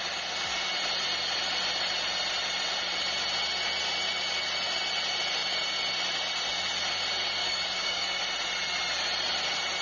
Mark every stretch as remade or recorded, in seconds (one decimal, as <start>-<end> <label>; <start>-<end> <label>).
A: 0.0-7.4 recorded; 7.4-8.2 remade; 8.2-9.8 recorded